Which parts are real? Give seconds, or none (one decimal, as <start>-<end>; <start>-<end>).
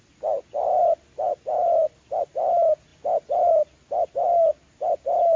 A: 0.0-5.4